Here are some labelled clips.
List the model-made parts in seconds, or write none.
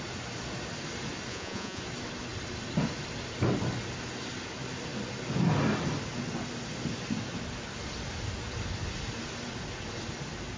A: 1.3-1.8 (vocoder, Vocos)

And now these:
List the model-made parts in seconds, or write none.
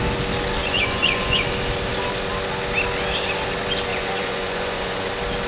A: 0.6-1.4 (vocoder, Vocos); 3.9-5.1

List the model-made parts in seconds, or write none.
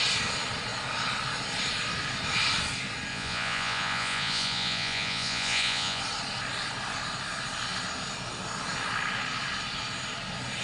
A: 3.1-6.0 (vocoder, Vocos)